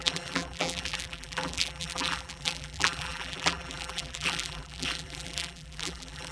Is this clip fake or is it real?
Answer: fake